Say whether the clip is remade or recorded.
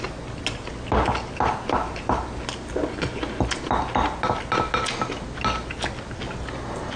recorded